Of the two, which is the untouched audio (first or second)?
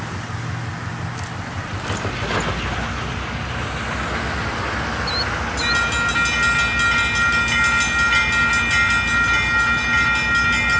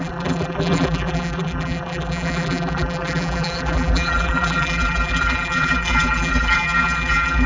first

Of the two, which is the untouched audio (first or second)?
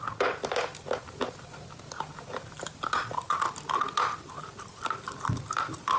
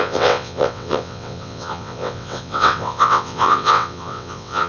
first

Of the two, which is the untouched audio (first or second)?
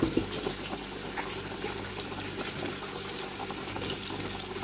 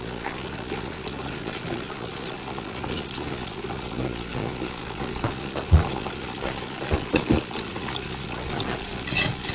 first